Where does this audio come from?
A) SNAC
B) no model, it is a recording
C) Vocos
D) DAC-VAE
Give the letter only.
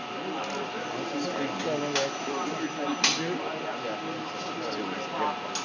B